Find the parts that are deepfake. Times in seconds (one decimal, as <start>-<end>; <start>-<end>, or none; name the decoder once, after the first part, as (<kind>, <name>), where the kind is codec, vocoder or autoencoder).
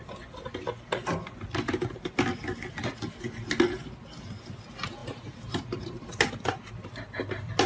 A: 5.0-6.7 (vocoder, BigVGAN v2)